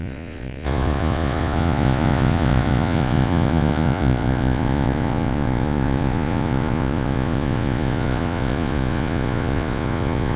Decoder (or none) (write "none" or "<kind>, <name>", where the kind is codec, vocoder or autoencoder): vocoder, Vocos